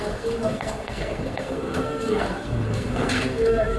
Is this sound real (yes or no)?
no